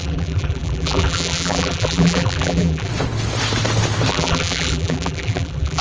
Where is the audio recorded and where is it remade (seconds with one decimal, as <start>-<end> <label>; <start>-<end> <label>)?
0.0-2.9 remade; 2.9-4.1 recorded; 4.1-5.8 remade